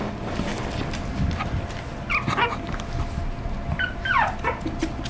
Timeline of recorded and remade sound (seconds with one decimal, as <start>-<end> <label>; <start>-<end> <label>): 0.0-5.1 recorded